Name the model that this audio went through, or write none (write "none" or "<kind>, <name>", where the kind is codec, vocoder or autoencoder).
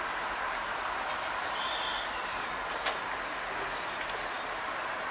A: none